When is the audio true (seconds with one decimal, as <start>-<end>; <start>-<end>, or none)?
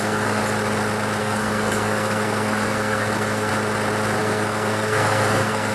0.4-1.2; 3.5-4.2